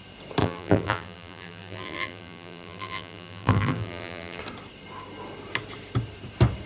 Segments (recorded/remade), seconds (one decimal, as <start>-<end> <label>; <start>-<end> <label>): 0.0-0.4 recorded; 0.4-4.4 remade; 4.4-6.7 recorded